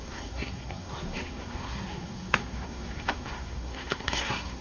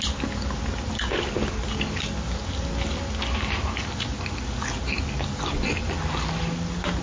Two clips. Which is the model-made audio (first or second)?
first